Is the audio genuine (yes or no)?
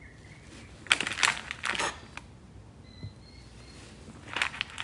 yes